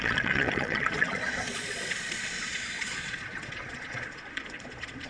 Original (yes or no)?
no